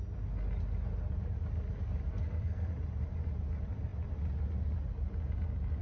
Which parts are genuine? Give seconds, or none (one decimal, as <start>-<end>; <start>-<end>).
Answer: 0.0-2.1; 2.7-5.8